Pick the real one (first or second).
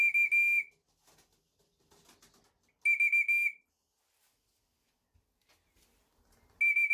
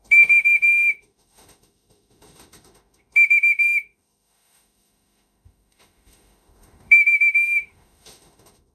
first